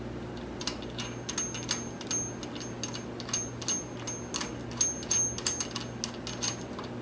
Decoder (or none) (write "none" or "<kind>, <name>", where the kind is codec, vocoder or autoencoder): none